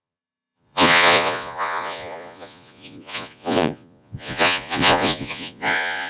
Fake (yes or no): yes